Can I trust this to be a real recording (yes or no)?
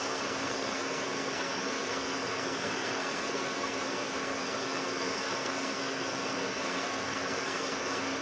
no